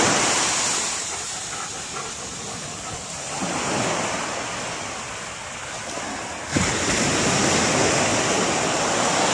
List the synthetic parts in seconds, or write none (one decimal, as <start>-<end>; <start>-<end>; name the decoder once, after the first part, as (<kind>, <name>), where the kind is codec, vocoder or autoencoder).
8.1-9.3 (vocoder, BigVGAN v2)